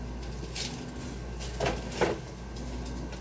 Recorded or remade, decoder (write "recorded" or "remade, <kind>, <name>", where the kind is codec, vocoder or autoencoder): recorded